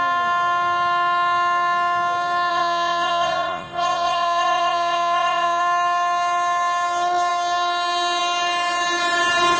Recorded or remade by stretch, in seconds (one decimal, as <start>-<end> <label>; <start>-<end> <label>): 0.0-2.5 recorded; 2.5-5.6 remade; 5.6-9.6 recorded